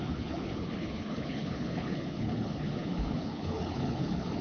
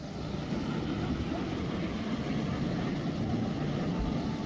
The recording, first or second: second